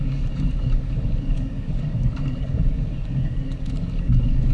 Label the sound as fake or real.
fake